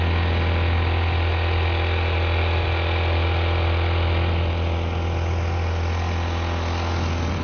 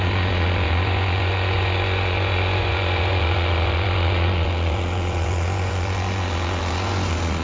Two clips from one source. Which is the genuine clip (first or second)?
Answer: first